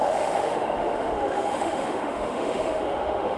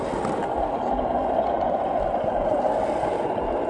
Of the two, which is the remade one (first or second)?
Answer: first